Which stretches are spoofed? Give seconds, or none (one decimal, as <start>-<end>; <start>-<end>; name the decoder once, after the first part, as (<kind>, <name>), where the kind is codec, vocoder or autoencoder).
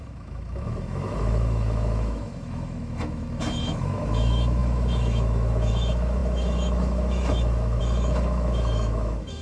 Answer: 0.0-9.4 (autoencoder, DAC-VAE)